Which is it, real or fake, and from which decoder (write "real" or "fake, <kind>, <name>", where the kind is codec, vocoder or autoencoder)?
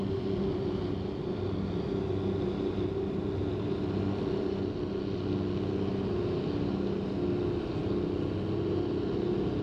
real